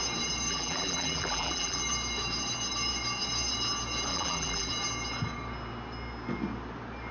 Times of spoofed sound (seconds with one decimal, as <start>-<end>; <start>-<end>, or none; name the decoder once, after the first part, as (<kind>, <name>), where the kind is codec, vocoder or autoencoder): 0.5-1.8 (vocoder, BigVGAN v2); 4.1-4.7